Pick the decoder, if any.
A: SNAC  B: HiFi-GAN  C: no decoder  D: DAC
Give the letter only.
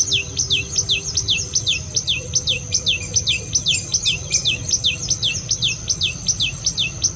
C